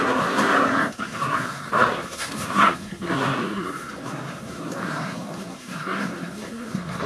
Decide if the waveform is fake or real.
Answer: fake